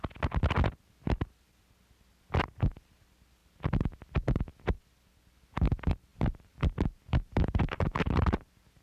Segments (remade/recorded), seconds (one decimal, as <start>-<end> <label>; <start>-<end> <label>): 0.0-6.1 recorded; 6.1-8.8 remade